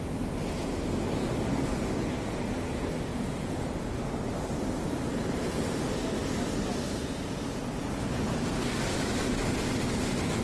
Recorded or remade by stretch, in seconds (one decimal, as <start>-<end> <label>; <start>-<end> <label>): 0.0-3.1 recorded; 3.1-3.9 remade; 3.9-10.4 recorded